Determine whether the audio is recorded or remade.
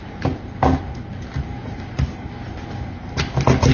recorded